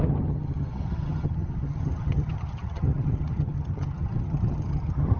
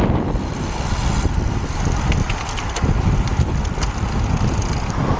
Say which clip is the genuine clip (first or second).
second